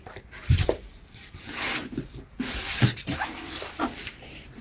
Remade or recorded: remade